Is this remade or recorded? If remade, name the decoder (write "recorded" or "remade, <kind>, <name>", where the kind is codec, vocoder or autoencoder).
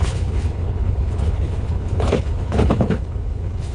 remade, codec, HILCodec